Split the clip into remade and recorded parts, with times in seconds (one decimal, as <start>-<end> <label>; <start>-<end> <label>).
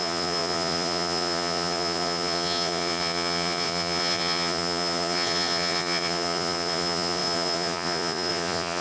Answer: 0.0-8.8 remade